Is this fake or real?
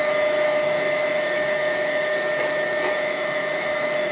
fake